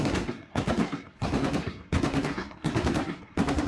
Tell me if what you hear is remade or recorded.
remade